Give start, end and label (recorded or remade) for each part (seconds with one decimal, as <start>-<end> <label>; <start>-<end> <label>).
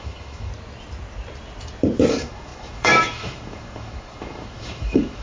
0.0-0.5 remade; 0.5-2.1 recorded; 2.1-5.2 remade